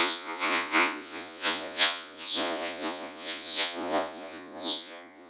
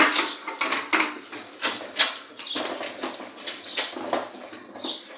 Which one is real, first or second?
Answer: second